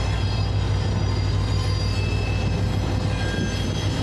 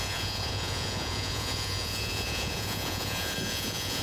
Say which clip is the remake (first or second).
second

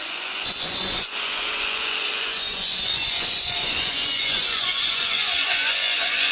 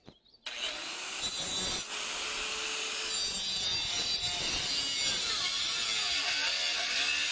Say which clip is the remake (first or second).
first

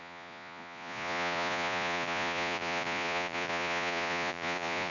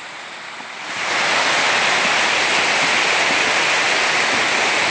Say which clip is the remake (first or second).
first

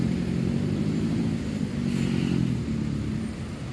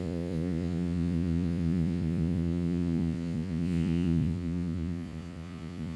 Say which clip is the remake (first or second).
second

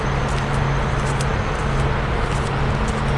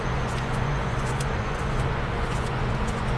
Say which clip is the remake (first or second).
second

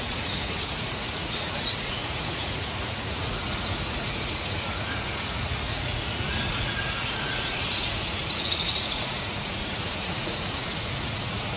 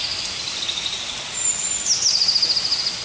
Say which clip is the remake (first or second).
first